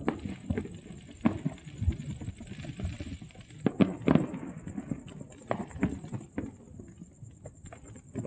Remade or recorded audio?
recorded